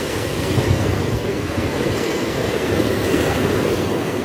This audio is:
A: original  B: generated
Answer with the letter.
B